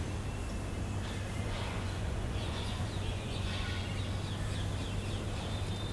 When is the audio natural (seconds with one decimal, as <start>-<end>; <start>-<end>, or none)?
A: 0.0-1.4; 3.9-5.9